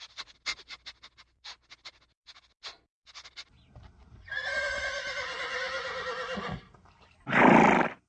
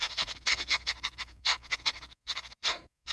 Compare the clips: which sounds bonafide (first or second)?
first